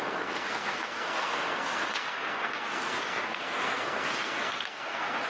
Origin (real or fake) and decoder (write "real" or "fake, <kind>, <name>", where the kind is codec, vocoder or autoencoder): fake, codec, SNAC